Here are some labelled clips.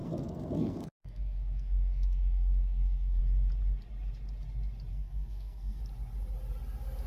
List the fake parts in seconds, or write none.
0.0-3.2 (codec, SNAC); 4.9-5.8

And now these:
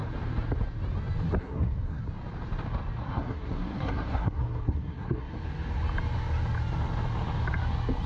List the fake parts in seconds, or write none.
1.4-2.0 (codec, SNAC); 3.0-5.3

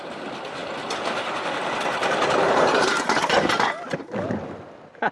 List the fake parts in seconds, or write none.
none

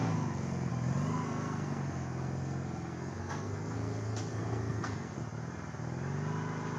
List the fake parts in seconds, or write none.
0.0-0.7 (codec, SNAC); 1.1-5.2

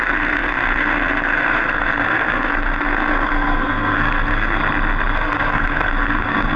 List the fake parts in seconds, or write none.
0.0-4.6 (codec, SNAC); 5.1-6.6

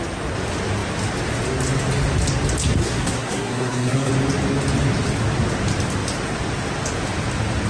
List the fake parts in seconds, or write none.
2.8-4.1 (codec, SNAC)

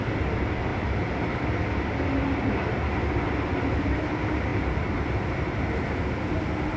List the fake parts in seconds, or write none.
none

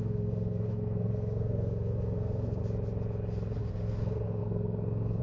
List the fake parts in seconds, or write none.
0.0-2.6 (codec, SNAC); 3.6-5.2